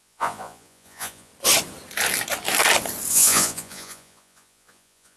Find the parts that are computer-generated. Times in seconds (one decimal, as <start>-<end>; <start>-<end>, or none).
0.0-1.3; 3.1-5.2